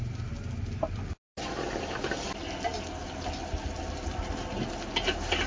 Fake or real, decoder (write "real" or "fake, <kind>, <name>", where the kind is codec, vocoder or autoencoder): real